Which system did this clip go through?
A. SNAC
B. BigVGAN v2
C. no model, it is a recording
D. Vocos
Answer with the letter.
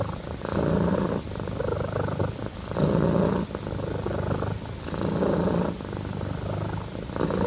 C